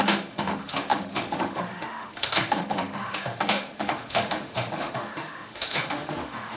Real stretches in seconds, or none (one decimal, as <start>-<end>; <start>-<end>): none

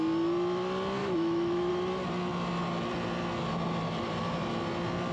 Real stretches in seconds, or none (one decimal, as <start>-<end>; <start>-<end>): 0.0-1.0; 1.7-5.1

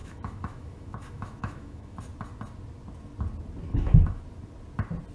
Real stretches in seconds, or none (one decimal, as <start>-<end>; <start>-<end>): 2.0-3.7; 4.2-5.1

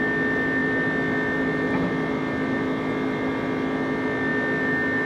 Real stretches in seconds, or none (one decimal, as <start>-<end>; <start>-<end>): 0.0-5.1

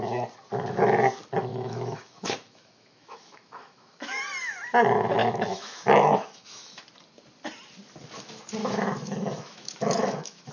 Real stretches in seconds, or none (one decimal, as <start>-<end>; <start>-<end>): 0.0-1.5; 4.2-5.2; 6.8-8.6

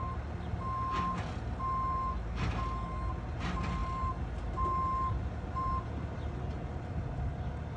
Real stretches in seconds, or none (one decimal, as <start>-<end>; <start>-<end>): 0.0-7.8

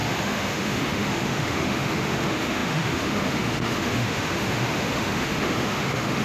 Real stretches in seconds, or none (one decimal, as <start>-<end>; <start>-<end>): none